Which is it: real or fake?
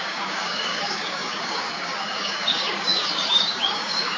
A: fake